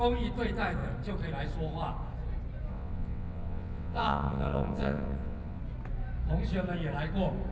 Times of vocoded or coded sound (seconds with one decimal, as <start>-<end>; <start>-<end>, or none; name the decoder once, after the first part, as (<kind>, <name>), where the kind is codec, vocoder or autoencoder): 2.7-5.6 (vocoder, WaveNeXt)